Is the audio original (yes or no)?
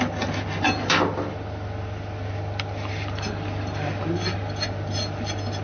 yes